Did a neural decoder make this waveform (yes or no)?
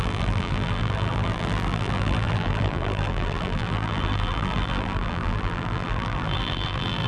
yes